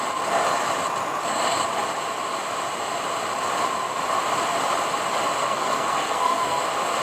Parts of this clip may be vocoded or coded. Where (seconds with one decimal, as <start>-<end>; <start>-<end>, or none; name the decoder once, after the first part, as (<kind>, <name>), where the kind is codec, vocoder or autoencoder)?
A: 5.4-6.6 (codec, SNAC)